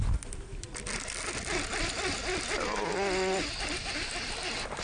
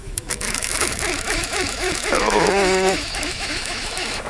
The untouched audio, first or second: first